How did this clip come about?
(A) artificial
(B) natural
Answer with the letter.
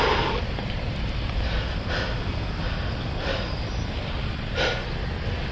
B